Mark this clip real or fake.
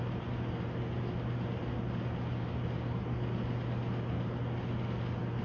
real